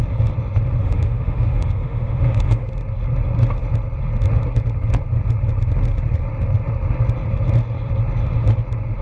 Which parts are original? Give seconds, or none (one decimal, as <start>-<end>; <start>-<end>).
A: 0.0-0.8; 2.7-9.0